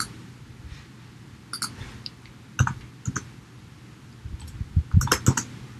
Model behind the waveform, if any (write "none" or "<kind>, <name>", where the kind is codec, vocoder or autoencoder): none